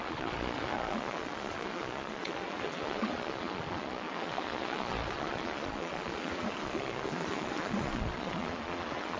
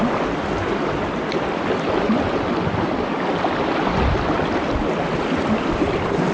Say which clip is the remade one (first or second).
first